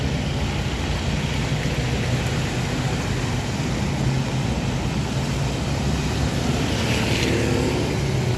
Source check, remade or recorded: recorded